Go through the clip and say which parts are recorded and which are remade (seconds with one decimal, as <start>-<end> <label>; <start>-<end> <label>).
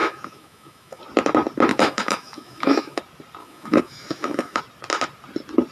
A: 0.0-1.0 remade; 1.0-1.7 recorded; 1.7-3.0 remade; 3.0-3.4 recorded; 3.4-4.6 remade; 4.6-5.7 recorded